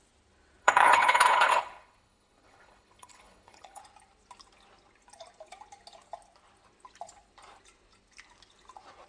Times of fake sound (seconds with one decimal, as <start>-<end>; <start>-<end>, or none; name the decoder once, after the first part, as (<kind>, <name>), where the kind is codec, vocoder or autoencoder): 0.6-3.8 (codec, HILCodec)